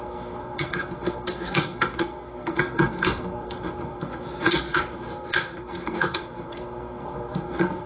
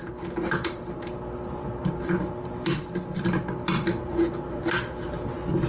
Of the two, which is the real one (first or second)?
second